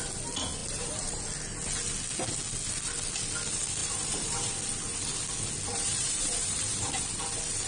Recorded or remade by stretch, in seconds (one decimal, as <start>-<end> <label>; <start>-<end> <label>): 0.0-0.6 recorded; 0.6-1.2 remade; 1.2-3.8 recorded; 3.8-4.5 remade; 4.5-5.7 recorded; 5.7-6.9 remade; 6.9-7.7 recorded